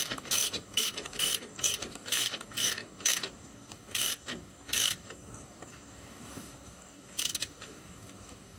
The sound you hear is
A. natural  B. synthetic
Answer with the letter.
B